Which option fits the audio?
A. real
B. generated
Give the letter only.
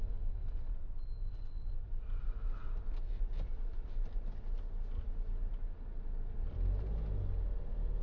A